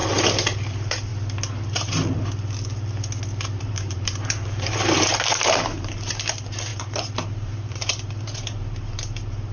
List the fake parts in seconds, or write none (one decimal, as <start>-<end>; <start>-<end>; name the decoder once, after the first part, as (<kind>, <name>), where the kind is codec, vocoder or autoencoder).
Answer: 0.7-1.1 (vocoder, BigVGAN v2); 3.6-9.5